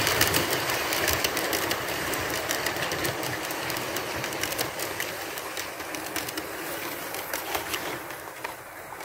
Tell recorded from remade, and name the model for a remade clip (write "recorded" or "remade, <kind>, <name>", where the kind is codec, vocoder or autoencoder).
remade, vocoder, BigVGAN v2